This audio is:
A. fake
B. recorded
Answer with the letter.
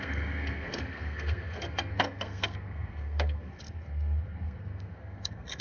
A